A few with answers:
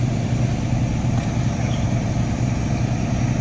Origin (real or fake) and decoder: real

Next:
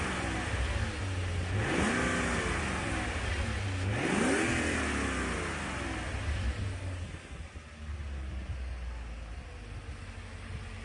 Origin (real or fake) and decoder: real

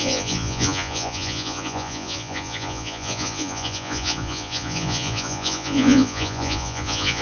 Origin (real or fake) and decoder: fake, vocoder, Vocos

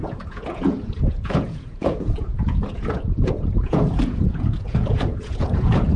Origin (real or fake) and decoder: fake, vocoder, Vocos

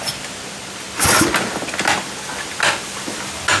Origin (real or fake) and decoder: real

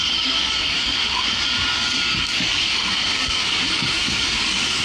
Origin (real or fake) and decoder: fake, codec, DAC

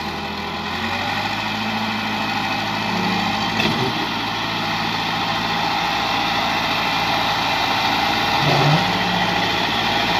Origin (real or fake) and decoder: real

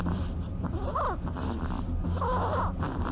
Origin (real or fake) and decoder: real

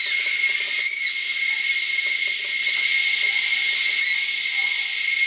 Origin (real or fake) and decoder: real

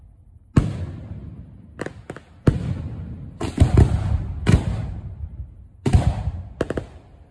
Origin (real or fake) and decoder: real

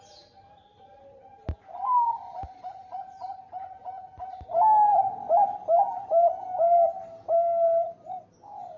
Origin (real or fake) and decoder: real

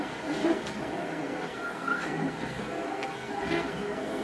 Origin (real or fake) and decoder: fake, codec, SNAC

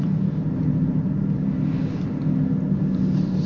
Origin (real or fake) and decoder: real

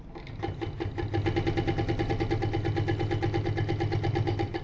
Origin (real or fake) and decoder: real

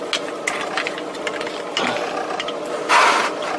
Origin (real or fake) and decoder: real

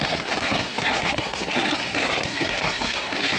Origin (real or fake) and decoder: fake, codec, SNAC